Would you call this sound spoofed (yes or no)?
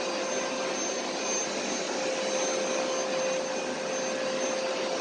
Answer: no